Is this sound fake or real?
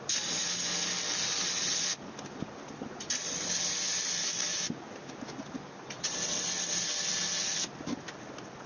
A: real